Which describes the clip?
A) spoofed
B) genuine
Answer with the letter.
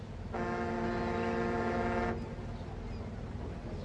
B